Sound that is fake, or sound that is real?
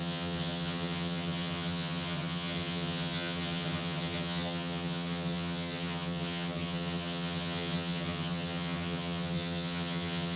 fake